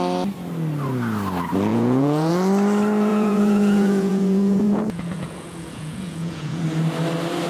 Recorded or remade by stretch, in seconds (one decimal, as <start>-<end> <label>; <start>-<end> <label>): 0.0-1.7 recorded; 1.7-2.3 remade; 2.3-3.1 recorded; 3.1-6.6 remade; 6.6-7.5 recorded

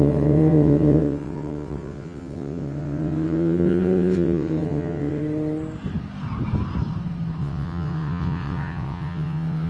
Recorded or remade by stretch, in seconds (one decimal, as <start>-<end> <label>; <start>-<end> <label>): 0.0-5.2 remade; 5.2-7.4 recorded; 7.4-9.7 remade

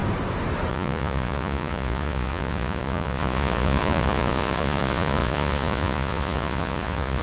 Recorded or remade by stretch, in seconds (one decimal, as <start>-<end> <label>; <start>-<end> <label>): 0.0-0.7 recorded; 0.7-7.2 remade

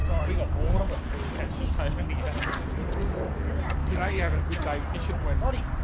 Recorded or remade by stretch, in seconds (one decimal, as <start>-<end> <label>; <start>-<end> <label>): 0.0-3.8 recorded; 3.8-4.4 remade; 4.4-5.8 recorded

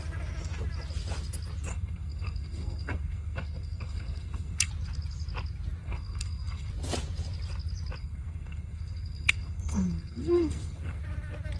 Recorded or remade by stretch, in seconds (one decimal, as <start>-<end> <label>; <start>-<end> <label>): 0.0-1.7 recorded; 1.7-4.7 remade; 4.7-5.8 recorded; 5.8-6.7 remade; 6.7-8.0 recorded; 8.0-11.0 remade; 11.0-11.6 recorded

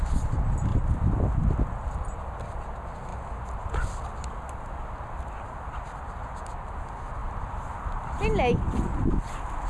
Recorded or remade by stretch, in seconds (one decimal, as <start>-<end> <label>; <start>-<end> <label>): 0.0-9.7 recorded